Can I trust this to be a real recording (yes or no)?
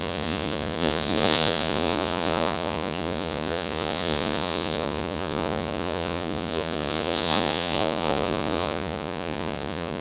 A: no